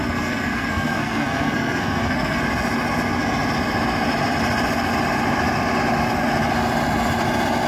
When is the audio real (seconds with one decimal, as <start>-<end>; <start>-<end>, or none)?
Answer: 2.4-7.7